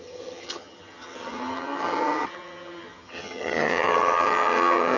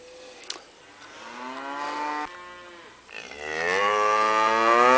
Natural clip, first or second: second